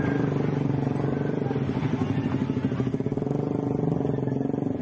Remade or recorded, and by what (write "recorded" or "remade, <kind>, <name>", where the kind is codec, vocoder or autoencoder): recorded